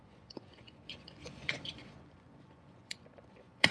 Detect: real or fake fake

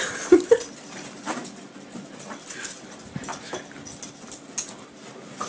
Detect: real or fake real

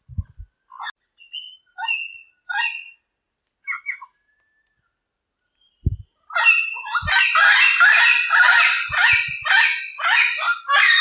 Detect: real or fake real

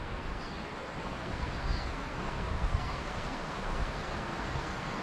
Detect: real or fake fake